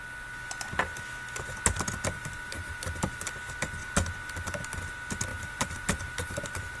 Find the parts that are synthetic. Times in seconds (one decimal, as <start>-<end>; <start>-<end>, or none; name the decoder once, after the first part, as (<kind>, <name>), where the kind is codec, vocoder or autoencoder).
2.2-3.3 (vocoder, BigVGAN v2); 5.3-6.8